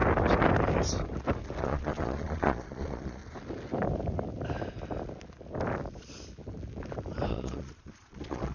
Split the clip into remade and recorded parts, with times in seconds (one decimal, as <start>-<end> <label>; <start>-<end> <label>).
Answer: 0.0-1.6 recorded; 1.6-3.2 remade; 3.2-7.3 recorded; 7.3-8.5 remade